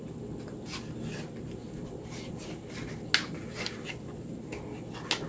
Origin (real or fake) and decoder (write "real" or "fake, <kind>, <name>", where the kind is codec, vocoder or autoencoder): real